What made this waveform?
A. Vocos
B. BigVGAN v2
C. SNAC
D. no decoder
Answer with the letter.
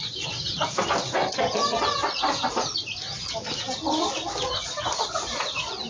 D